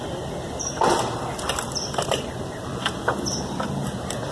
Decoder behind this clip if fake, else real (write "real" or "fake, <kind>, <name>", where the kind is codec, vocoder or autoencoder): fake, vocoder, BigVGAN v2